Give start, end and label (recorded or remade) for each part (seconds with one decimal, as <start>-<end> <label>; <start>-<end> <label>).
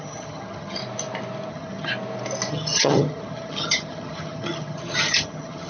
0.0-0.8 remade; 0.8-1.5 recorded; 1.5-1.9 remade; 1.9-2.5 recorded; 2.5-5.7 remade